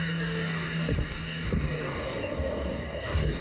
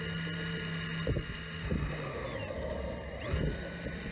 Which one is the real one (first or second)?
second